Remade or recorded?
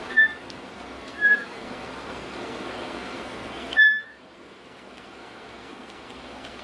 remade